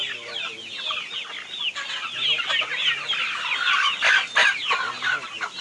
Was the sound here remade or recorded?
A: recorded